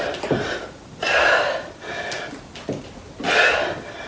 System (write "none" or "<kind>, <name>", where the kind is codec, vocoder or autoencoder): none